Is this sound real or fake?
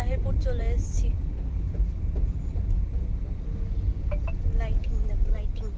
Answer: real